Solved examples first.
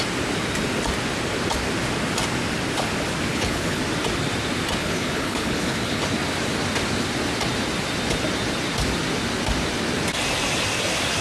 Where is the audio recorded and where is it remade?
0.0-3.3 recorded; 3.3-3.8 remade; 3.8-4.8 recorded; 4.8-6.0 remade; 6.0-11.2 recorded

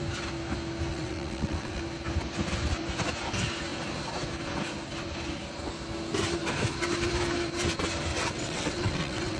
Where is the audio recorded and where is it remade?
0.0-0.9 recorded; 0.9-1.8 remade; 1.8-8.1 recorded; 8.1-9.4 remade